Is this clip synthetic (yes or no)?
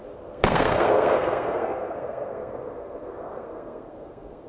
yes